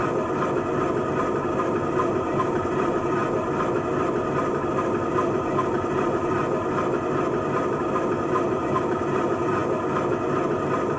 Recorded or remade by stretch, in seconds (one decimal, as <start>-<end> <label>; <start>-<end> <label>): 0.0-11.0 recorded